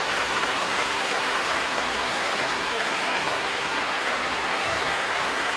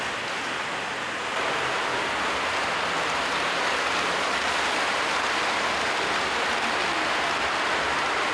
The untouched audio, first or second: second